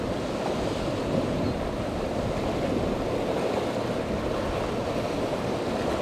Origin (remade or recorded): recorded